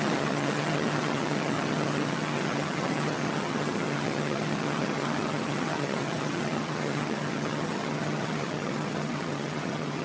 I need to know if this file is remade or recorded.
remade